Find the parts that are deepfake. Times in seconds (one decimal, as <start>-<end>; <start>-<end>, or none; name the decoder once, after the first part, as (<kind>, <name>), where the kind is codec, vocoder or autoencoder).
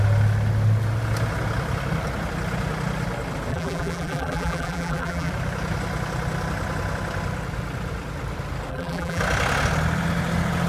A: 3.5-5.3 (vocoder, BigVGAN v2); 8.7-9.2